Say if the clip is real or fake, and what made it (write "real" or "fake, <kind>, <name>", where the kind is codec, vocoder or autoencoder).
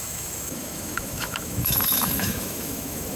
fake, autoencoder, DAC-VAE